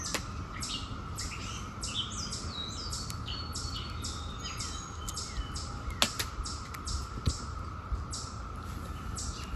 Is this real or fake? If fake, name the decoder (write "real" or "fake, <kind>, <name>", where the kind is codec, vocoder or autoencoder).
real